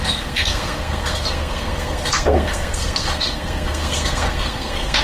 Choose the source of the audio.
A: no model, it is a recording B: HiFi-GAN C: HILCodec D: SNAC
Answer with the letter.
D